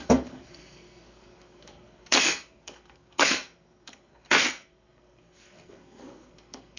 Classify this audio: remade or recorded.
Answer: remade